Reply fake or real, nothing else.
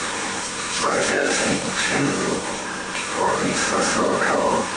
fake